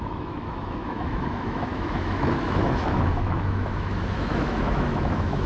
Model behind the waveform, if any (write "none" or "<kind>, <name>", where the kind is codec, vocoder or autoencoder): autoencoder, DAC-VAE